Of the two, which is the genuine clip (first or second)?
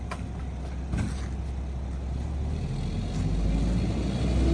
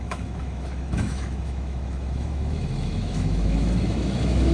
first